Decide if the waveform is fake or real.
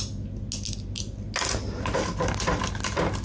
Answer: real